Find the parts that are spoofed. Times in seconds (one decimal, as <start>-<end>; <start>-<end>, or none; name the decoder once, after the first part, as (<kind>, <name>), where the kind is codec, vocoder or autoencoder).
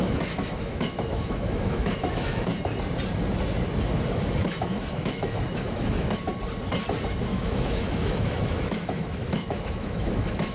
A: 0.0-2.5 (autoencoder, DAC-VAE); 4.1-6.3; 7.2-10.5